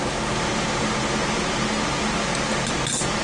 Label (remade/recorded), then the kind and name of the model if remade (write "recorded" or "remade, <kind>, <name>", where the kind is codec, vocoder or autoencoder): recorded